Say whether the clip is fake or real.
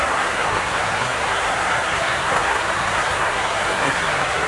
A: fake